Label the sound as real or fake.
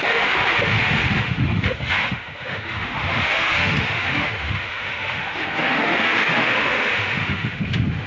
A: fake